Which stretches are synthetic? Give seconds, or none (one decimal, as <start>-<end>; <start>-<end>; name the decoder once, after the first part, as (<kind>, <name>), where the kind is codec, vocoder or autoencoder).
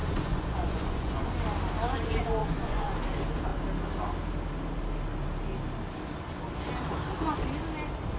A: 0.0-1.3 (vocoder, Vocos); 2.4-2.9